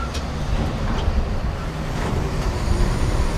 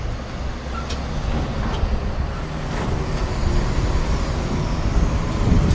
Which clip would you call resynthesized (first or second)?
first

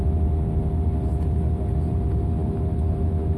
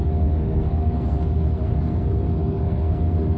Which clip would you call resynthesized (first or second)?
second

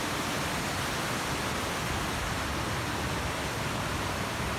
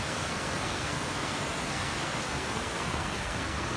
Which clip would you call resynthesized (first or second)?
second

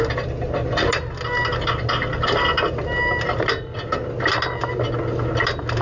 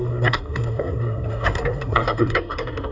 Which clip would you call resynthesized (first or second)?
second